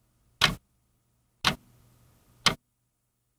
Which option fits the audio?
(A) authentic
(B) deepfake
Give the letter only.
A